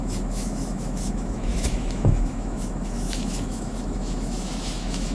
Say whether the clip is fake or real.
fake